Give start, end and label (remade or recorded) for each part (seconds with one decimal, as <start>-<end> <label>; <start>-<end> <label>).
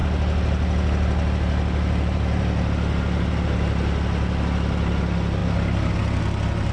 0.0-6.7 recorded